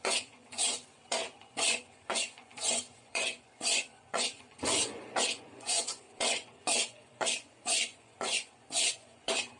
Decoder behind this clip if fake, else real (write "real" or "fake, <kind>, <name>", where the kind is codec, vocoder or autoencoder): fake, vocoder, Vocos